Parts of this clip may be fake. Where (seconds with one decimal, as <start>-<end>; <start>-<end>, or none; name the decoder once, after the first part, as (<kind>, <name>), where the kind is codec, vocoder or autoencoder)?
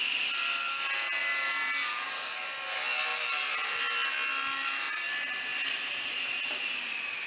1.2-2.6 (vocoder, BigVGAN v2); 3.1-3.8; 5.5-6.7